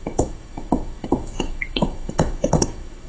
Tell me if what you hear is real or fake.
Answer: fake